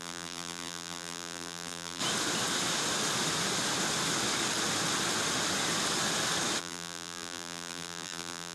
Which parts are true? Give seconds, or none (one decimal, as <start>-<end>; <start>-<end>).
2.0-6.6